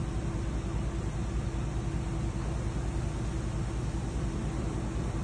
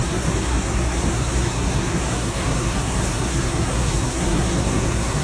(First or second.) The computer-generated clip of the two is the second